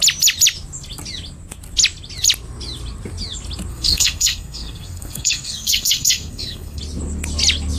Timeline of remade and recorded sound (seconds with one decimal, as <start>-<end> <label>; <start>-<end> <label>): 0.0-3.7 recorded; 3.7-6.8 remade; 6.8-7.8 recorded